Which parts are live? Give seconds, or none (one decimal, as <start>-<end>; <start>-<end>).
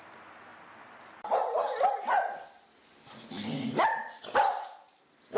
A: 0.5-1.9; 2.8-4.2